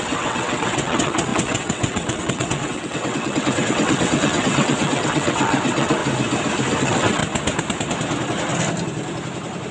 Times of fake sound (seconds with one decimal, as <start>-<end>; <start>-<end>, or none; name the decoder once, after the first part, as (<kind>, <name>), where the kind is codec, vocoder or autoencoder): 0.0-6.0 (vocoder, WaveNeXt); 6.8-7.2